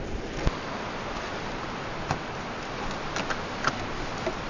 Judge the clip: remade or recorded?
recorded